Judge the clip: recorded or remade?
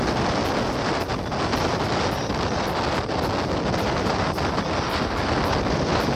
recorded